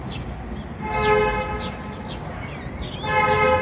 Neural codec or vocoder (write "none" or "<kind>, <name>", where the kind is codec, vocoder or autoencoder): none